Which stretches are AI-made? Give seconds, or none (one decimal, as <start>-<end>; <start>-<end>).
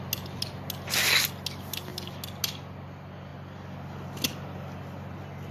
none